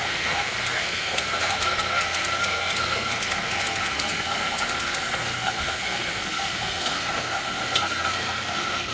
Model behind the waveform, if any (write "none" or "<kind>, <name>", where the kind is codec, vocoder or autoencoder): codec, SNAC